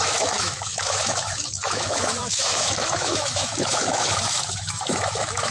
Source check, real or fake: fake